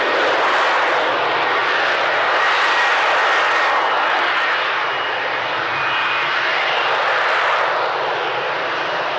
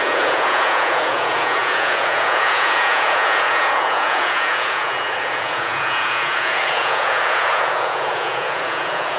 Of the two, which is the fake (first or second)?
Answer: second